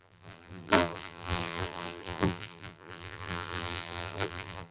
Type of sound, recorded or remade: remade